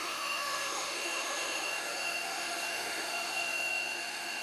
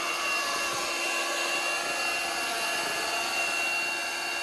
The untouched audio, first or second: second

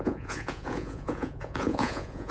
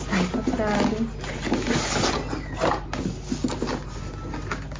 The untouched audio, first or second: second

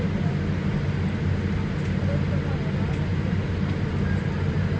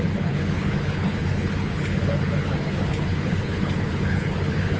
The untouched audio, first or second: first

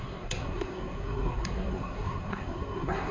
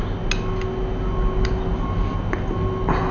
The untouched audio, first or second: second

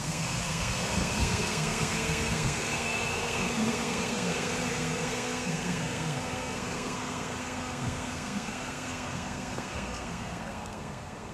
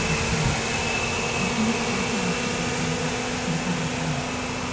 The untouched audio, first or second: second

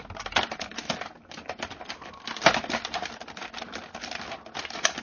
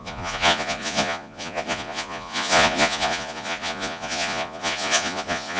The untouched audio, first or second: first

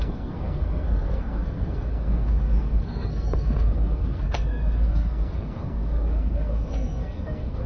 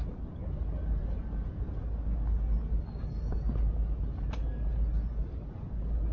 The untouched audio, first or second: second